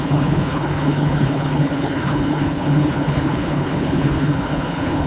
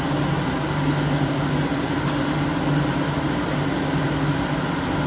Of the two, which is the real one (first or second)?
second